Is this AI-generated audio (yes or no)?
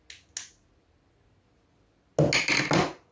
no